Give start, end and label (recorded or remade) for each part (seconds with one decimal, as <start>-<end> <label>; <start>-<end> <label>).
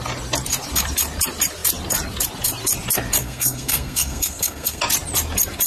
0.0-3.2 recorded; 3.2-4.8 remade; 4.8-5.7 recorded